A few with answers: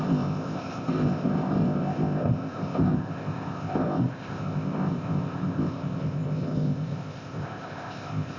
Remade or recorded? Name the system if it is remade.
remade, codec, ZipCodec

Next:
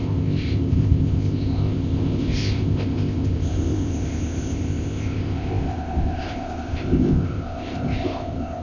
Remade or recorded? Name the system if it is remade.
remade, codec, ZipCodec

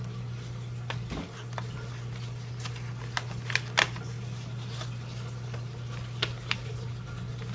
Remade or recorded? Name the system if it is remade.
recorded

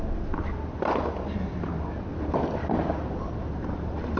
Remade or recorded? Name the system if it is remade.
recorded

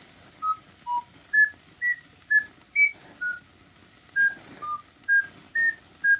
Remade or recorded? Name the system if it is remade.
recorded